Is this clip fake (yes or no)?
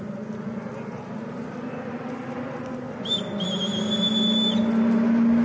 no